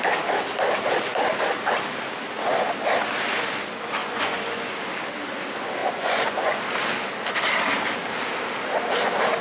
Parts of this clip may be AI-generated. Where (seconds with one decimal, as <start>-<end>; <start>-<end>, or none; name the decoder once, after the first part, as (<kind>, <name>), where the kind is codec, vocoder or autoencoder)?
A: 4.0-4.6 (vocoder, Vocos); 5.8-6.6